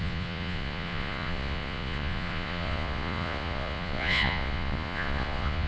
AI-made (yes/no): yes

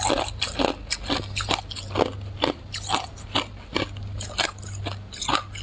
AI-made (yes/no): no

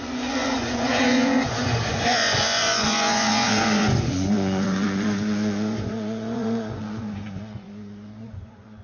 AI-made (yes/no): yes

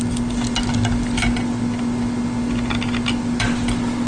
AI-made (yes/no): no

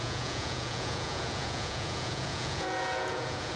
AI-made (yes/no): yes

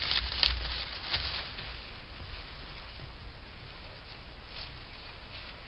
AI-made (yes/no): no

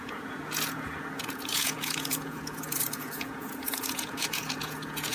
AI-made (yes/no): yes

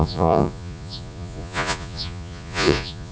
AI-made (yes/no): yes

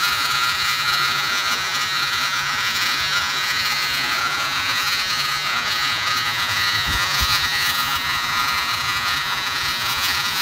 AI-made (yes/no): yes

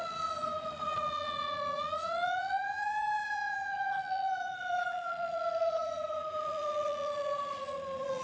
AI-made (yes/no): yes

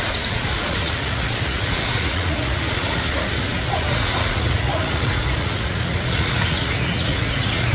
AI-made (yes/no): yes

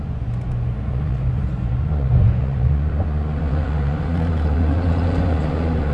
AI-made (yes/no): yes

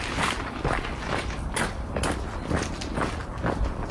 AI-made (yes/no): no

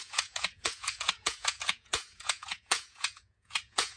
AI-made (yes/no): yes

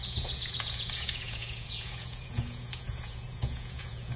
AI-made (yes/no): yes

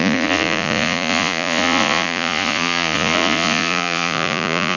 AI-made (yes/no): yes